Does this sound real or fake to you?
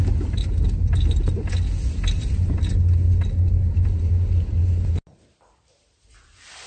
real